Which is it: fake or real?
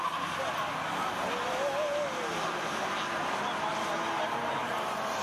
real